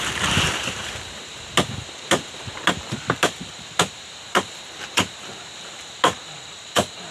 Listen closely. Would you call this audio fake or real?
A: fake